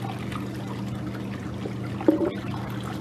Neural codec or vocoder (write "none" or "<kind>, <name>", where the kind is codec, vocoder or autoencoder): none